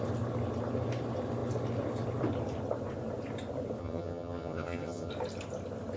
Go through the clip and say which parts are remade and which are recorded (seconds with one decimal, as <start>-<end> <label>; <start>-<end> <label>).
0.0-3.8 recorded; 3.8-5.1 remade; 5.1-6.0 recorded